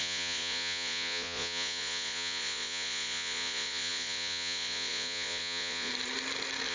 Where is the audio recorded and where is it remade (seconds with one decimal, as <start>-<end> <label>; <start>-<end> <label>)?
0.0-5.9 remade; 5.9-6.7 recorded